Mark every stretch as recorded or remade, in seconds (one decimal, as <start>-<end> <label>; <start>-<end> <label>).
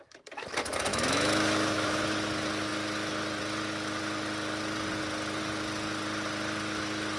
0.0-0.9 recorded; 0.9-2.0 remade; 2.0-7.2 recorded